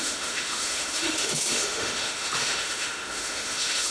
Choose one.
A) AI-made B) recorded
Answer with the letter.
A